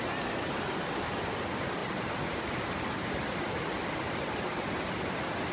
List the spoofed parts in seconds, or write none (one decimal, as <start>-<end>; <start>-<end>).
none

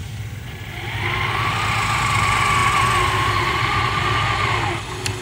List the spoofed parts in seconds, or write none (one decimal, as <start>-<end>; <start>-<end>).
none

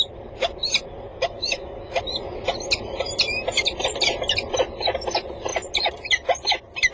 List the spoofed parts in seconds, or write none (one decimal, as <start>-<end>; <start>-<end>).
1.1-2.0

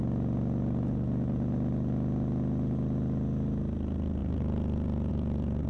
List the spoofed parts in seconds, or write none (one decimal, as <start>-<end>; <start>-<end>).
none

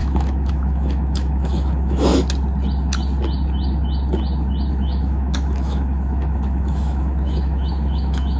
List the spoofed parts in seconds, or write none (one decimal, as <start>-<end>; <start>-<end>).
0.0-2.1; 4.7-8.4

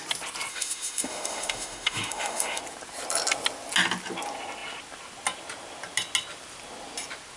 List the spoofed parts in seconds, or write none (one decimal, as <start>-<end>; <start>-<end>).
0.5-2.6

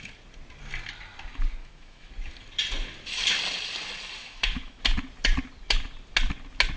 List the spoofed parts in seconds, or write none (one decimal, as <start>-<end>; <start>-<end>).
1.6-2.1; 4.2-4.8

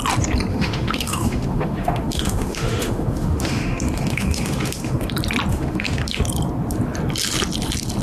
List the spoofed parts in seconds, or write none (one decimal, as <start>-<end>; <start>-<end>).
0.5-5.1; 5.5-6.2